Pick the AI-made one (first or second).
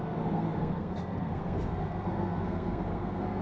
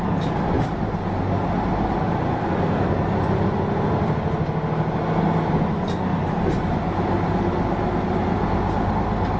first